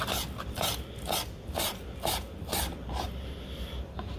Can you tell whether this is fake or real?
fake